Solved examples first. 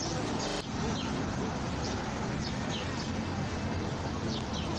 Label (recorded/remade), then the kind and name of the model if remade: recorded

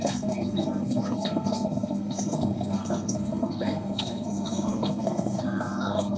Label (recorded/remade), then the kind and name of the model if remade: remade, codec, SNAC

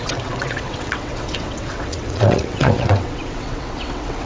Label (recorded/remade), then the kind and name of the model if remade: remade, vocoder, WaveNeXt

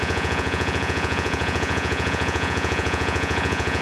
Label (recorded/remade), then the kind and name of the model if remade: remade, vocoder, Vocos